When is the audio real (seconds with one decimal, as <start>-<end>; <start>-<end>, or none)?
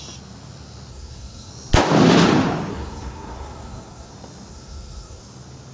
0.0-0.9; 1.5-2.7; 4.1-4.5; 5.2-5.7